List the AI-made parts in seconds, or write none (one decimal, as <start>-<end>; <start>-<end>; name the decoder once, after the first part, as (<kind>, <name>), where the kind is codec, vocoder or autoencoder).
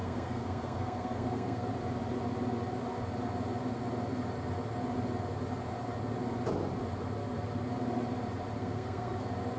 0.0-1.7 (codec, SNAC); 8.6-9.2